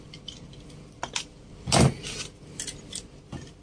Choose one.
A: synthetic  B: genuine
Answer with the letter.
B